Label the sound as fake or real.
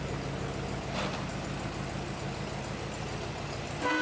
real